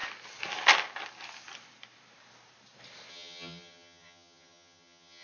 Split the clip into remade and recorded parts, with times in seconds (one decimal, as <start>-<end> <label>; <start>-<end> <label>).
0.0-3.1 recorded; 3.1-5.2 remade